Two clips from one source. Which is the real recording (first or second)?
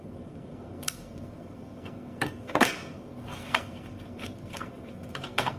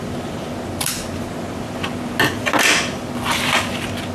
second